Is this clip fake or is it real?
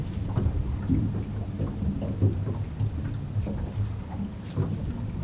real